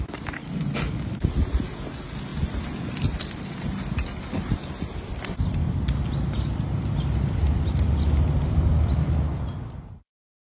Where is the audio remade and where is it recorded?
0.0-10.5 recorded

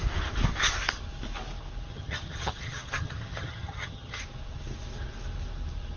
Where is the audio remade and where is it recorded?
0.0-1.9 recorded; 1.9-4.2 remade; 4.2-6.0 recorded

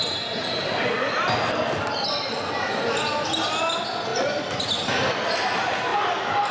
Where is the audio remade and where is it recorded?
0.0-6.5 recorded

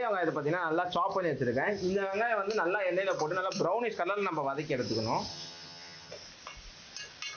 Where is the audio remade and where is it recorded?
0.0-5.3 recorded; 5.3-6.1 remade; 6.1-7.4 recorded

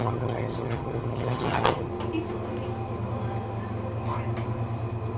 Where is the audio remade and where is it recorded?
0.0-1.9 remade; 1.9-5.2 recorded

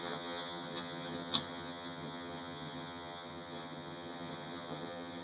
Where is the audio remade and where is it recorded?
0.0-5.2 remade

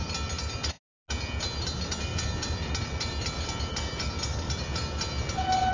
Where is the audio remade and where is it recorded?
0.0-5.7 recorded